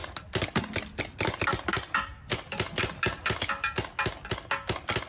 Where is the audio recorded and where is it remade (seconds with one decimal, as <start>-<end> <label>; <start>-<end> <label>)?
0.0-5.1 recorded